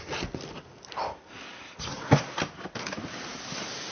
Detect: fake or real real